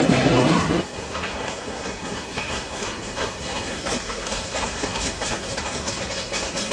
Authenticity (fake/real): fake